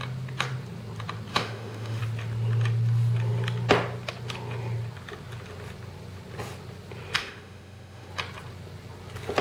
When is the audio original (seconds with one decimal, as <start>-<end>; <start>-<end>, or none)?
0.0-1.3; 2.0-7.2; 8.1-9.4